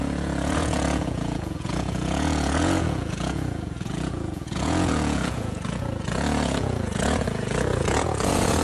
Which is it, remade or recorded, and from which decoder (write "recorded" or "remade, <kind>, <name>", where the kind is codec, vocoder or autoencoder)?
remade, vocoder, Vocos